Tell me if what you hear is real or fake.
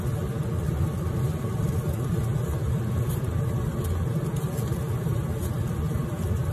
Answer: real